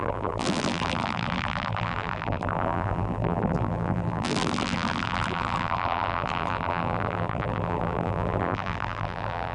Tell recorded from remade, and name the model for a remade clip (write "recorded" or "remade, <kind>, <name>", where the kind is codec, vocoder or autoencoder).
remade, vocoder, BigVGAN v2